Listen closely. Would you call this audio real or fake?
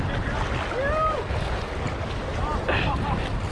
real